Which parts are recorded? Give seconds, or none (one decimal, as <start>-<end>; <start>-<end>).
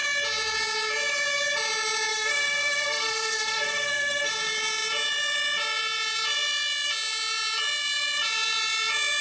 0.0-2.1; 4.3-9.2